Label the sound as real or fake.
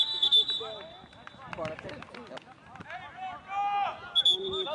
real